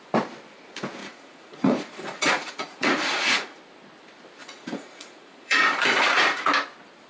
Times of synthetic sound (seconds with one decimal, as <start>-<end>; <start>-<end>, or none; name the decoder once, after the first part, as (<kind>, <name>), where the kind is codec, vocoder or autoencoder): 1.0-3.6 (vocoder, Vocos); 4.4-6.5